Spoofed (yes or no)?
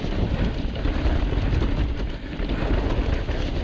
no